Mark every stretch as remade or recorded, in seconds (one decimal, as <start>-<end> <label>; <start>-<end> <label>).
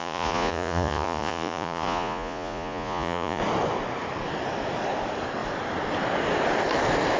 0.0-3.4 remade; 3.4-7.2 recorded